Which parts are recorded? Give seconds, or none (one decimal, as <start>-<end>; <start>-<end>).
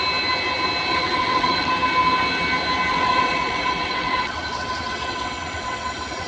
0.0-0.9; 1.7-2.9